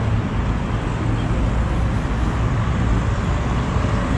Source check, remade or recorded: recorded